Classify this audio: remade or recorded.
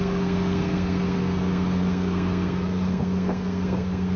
remade